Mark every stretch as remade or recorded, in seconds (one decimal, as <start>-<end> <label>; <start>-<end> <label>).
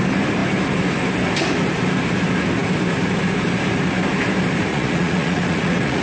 0.0-4.7 recorded; 4.7-6.0 remade